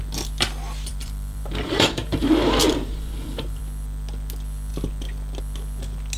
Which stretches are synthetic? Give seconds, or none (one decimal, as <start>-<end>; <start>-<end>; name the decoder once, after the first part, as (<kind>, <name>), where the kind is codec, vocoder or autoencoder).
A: 0.9-3.6 (vocoder, BigVGAN v2)